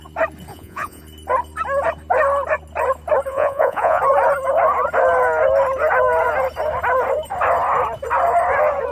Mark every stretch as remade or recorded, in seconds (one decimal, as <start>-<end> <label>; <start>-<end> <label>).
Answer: 0.0-0.5 recorded; 0.5-1.0 remade; 1.0-3.3 recorded; 3.3-4.0 remade; 4.0-8.9 recorded